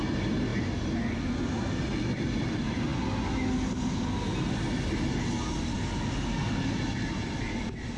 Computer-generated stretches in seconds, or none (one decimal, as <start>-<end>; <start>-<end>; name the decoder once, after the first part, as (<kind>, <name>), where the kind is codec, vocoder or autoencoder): none

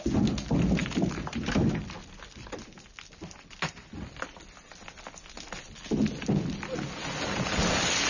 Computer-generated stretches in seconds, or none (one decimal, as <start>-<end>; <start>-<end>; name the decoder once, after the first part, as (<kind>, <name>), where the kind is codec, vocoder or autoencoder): 0.8-1.5 (vocoder, BigVGAN v2)

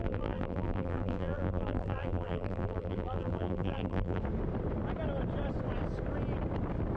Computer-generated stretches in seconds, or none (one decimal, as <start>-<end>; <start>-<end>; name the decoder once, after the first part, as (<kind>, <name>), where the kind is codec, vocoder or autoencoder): 0.0-4.2 (vocoder, BigVGAN v2)

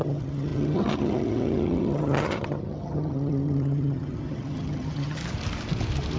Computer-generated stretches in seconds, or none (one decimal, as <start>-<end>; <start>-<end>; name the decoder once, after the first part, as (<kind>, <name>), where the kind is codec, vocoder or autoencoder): 0.0-5.2 (vocoder, HiFi-GAN)

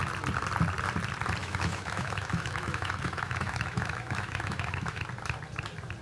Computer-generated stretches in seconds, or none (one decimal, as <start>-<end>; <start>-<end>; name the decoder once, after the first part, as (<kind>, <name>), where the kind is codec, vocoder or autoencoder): 1.4-5.0 (autoencoder, DAC-VAE)

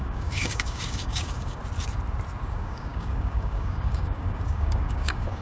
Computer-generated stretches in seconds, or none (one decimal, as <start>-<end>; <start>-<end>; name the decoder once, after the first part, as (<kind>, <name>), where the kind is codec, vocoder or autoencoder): 0.0-1.6 (codec, DAC); 2.4-5.4